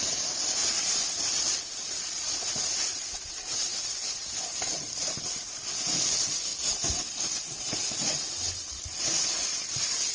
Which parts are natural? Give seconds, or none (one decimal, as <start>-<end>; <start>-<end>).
0.0-10.1